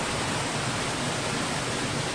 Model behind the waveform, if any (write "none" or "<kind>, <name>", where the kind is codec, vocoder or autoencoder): none